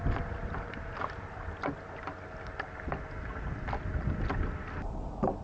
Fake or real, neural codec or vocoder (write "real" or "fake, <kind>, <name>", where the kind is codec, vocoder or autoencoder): real